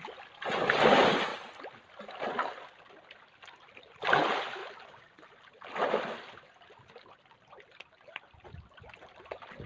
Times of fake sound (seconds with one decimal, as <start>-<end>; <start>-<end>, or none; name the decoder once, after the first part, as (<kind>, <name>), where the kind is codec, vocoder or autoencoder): 0.0-1.3 (vocoder, BigVGAN v2); 2.2-4.6; 7.5-9.7